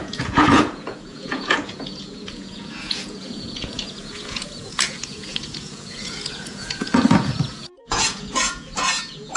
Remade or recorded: remade